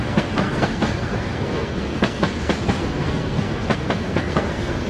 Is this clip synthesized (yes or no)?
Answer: yes